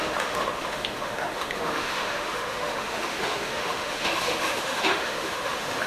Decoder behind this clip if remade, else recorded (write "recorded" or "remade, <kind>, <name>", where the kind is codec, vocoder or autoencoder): remade, autoencoder, DAC-VAE